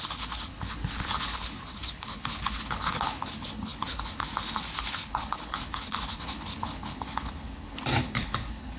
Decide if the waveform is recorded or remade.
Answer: remade